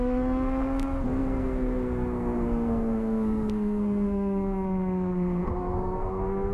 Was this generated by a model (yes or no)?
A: yes